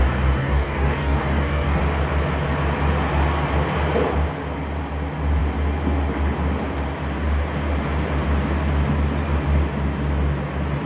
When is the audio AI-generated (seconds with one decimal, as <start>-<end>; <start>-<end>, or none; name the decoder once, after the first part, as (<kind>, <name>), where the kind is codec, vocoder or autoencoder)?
0.4-1.8 (codec, DAC)